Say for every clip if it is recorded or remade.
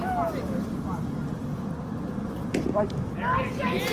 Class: recorded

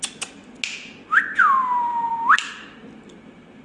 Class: recorded